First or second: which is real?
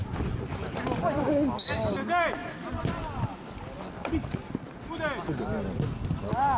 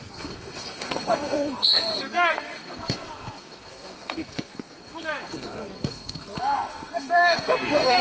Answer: first